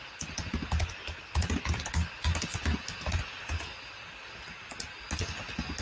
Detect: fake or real real